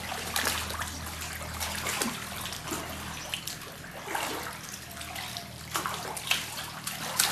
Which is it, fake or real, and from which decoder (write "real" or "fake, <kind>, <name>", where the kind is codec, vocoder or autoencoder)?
real